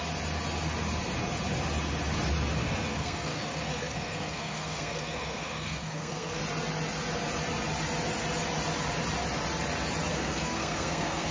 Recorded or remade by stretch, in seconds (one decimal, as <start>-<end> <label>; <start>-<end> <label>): 0.0-2.6 recorded; 2.6-6.4 remade; 6.4-10.1 recorded; 10.1-11.3 remade